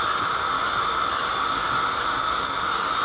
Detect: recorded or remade recorded